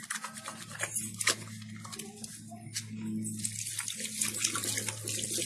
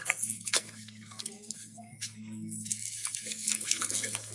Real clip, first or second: first